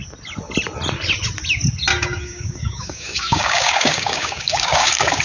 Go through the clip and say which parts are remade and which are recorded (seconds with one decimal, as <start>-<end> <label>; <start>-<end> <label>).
0.0-1.9 recorded; 1.9-5.2 remade